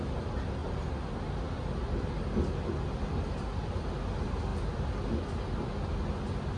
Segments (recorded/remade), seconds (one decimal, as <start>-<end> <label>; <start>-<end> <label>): 0.0-0.6 recorded; 0.6-2.1 remade; 2.1-6.6 recorded